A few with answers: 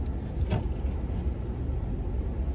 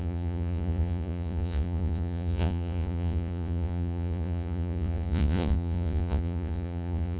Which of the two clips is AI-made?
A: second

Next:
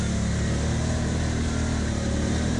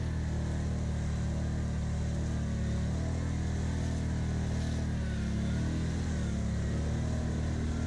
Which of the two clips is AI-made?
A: first